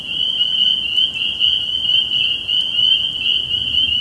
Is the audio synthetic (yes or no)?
no